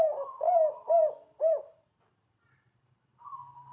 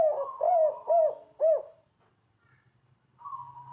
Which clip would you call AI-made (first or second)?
first